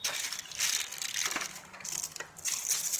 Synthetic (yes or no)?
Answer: no